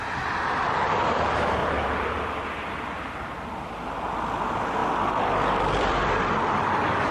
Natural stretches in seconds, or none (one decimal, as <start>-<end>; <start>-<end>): 0.0-1.6; 3.1-4.8